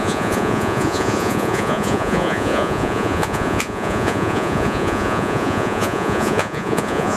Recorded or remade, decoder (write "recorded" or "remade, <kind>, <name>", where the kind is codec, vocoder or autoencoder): remade, vocoder, Vocos